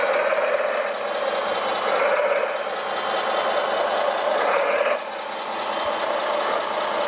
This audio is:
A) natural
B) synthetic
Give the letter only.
A